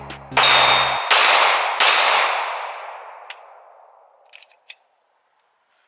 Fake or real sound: real